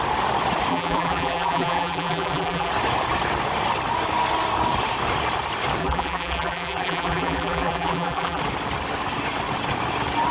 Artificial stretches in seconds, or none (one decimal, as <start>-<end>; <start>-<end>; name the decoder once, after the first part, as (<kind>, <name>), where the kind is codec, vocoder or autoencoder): 0.7-2.7 (vocoder, BigVGAN v2); 5.8-8.4